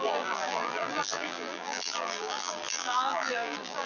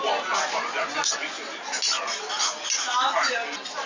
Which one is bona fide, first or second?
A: second